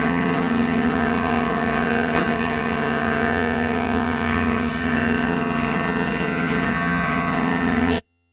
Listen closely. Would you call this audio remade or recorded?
remade